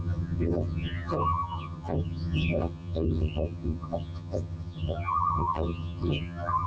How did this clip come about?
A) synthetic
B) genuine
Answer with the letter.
A